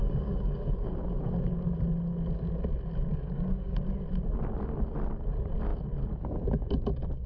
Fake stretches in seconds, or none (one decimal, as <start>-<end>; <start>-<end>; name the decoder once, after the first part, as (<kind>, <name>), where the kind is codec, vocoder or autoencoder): 0.0-0.9 (codec, DAC); 3.1-3.7